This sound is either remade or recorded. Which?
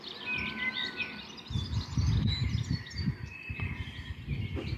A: recorded